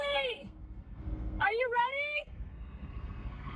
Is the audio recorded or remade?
remade